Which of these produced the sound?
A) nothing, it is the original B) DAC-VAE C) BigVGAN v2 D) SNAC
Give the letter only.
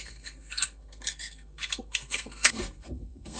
D